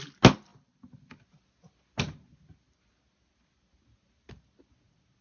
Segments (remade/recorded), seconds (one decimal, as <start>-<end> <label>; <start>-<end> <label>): 0.0-5.2 recorded